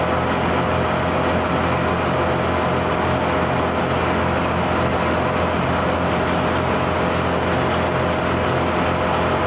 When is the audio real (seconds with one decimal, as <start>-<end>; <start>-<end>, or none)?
0.0-9.5